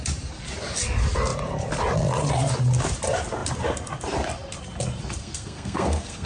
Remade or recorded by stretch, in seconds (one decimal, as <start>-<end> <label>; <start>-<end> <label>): 0.0-5.2 recorded; 5.2-6.3 remade